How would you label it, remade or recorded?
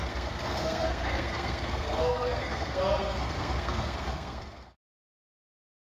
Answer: remade